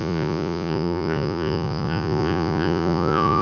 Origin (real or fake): fake